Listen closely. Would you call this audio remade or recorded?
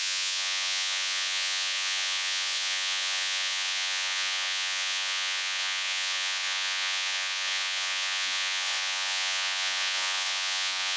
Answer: remade